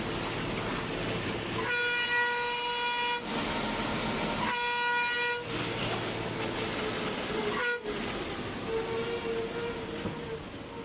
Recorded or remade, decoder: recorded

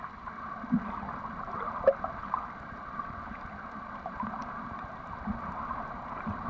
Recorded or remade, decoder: recorded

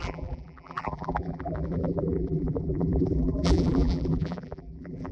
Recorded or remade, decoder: remade, vocoder, BigVGAN v2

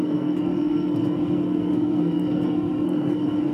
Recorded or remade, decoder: remade, codec, SNAC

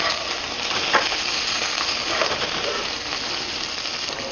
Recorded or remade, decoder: recorded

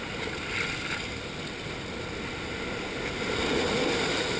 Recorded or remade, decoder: recorded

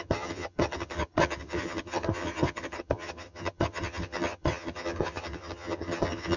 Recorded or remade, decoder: remade, vocoder, HiFi-GAN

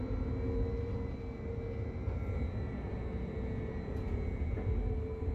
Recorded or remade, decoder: recorded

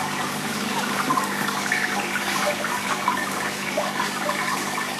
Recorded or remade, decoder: remade, codec, DAC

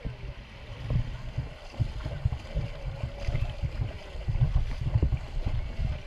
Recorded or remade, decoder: recorded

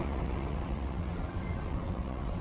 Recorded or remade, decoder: remade, vocoder, WaveNeXt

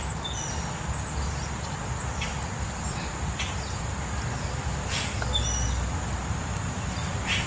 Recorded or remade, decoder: recorded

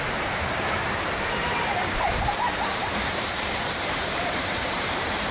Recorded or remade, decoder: remade, vocoder, BigVGAN v2